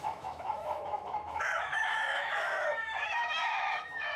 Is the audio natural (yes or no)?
no